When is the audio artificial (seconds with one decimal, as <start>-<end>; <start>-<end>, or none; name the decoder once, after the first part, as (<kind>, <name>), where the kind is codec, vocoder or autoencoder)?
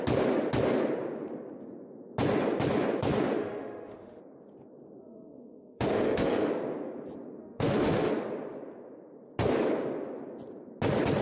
3.4-4.2 (autoencoder, DAC-VAE); 5.0-6.5; 7.4-8.1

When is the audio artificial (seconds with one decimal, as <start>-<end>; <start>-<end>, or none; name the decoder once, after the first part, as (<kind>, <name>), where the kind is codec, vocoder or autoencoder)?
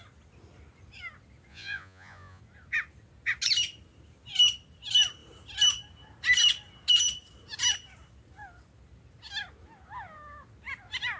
1.5-2.4 (vocoder, Vocos)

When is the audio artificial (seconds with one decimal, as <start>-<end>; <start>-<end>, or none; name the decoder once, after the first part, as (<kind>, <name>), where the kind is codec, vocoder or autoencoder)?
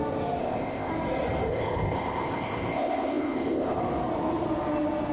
0.4-0.9 (codec, ZipCodec); 1.5-3.8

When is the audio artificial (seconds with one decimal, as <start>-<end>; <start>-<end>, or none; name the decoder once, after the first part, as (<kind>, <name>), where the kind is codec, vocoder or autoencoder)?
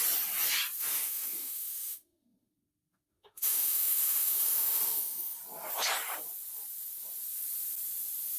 0.8-5.4 (autoencoder, DAC-VAE)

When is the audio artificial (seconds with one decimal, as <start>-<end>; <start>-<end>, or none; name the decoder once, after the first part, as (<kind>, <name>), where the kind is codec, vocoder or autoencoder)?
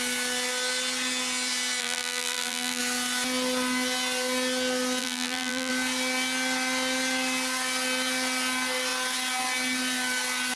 1.8-2.8 (vocoder, BigVGAN v2); 5.0-5.7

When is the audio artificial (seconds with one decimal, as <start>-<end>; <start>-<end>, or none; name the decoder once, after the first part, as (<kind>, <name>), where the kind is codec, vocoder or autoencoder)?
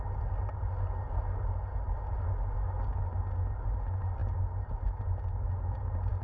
none